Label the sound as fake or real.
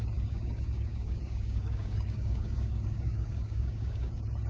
fake